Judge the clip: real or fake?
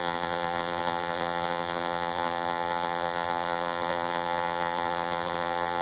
fake